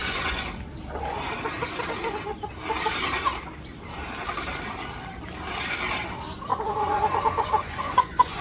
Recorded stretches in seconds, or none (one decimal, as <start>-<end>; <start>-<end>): 0.5-6.5